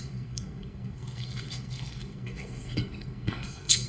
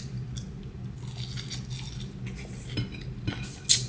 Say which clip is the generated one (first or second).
first